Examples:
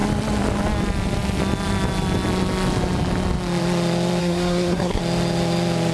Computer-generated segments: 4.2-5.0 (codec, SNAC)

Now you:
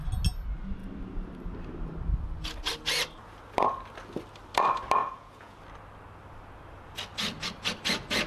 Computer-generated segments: 5.0-5.6 (vocoder, Vocos)

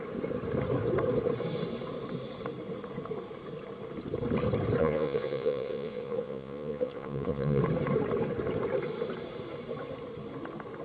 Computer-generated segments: 4.8-7.6 (vocoder, Vocos)

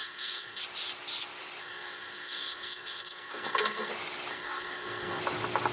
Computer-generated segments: 0.0-0.6 (codec, SNAC); 1.6-3.9; 4.3-5.2

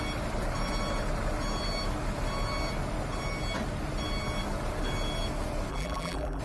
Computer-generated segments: 5.7-6.4 (vocoder, BigVGAN v2)

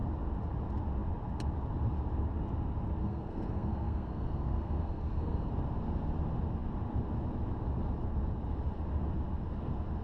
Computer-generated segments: 3.0-5.5 (codec, SNAC)